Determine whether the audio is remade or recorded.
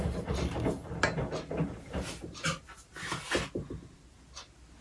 recorded